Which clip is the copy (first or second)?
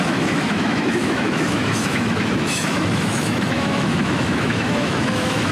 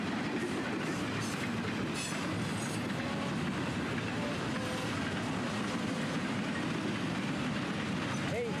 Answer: first